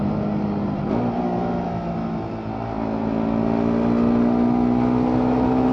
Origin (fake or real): real